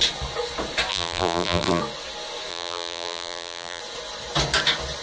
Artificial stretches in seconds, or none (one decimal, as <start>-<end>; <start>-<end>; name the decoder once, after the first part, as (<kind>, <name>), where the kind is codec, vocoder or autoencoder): 0.9-1.8 (vocoder, BigVGAN v2); 2.5-3.8